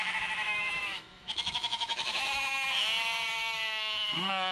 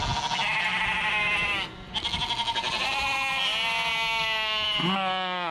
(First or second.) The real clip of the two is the second